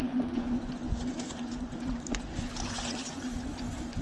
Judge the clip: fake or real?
fake